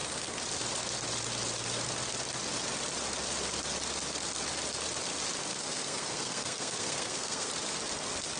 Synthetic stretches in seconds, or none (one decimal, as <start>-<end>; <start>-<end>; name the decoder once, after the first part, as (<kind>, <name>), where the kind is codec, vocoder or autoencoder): 5.5-7.5 (codec, SNAC)